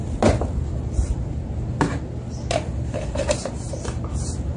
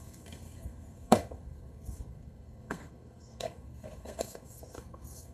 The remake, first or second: second